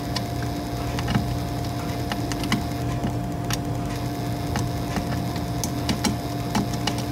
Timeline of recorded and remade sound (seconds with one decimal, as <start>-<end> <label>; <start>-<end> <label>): 0.0-7.1 recorded